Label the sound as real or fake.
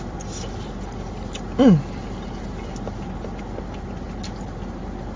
real